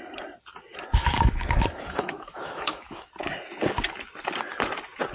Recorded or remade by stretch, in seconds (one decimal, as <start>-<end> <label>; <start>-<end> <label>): 0.0-1.0 recorded; 1.0-3.1 remade; 3.1-5.1 recorded